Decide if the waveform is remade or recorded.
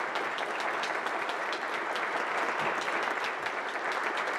recorded